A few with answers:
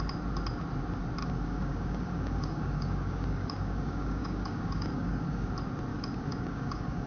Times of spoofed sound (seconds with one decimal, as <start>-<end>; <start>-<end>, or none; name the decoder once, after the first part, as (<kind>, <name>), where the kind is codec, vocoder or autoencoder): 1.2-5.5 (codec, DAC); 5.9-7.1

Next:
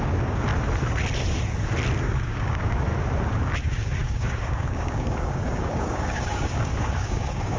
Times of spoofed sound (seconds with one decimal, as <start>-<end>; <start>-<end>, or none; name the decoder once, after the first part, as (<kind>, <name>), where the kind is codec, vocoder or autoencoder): 0.0-0.5 (codec, DAC); 2.0-2.9; 3.6-7.6

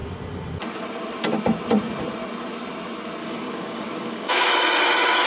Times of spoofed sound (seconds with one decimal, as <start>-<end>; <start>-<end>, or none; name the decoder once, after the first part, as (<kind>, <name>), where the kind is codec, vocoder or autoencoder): 3.2-4.5 (codec, DAC)